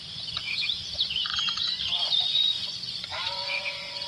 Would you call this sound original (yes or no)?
no